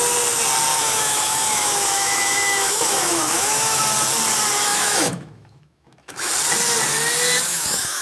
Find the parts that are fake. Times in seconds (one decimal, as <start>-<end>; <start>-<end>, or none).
0.7-3.8; 4.7-6.3; 7.5-8.0